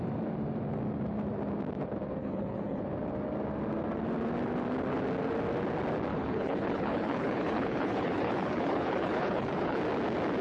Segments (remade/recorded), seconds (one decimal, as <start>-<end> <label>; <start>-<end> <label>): 0.0-2.2 recorded; 2.2-2.8 remade; 2.8-6.1 recorded; 6.1-9.8 remade; 9.8-10.4 recorded